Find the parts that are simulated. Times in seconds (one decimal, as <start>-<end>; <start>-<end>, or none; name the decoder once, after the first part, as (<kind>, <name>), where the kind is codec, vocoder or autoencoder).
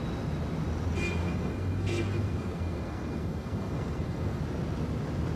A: 1.2-4.4 (codec, SNAC)